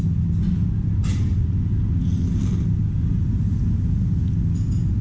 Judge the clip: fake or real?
real